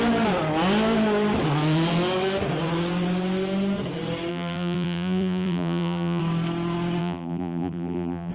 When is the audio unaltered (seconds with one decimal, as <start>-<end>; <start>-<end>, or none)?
0.0-4.3; 6.2-7.0